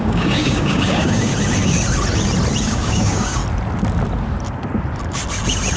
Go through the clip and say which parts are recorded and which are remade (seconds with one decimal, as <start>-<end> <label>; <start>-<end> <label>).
0.0-1.3 remade; 1.3-2.6 recorded; 2.6-3.4 remade; 3.4-5.8 recorded